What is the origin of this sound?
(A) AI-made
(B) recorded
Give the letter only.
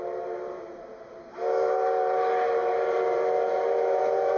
B